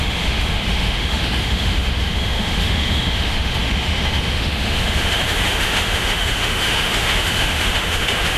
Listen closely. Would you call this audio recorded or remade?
remade